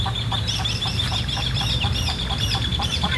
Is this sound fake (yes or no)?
yes